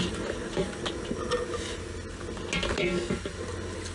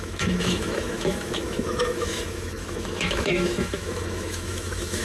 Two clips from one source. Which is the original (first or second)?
first